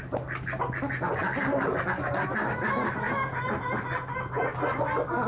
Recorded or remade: recorded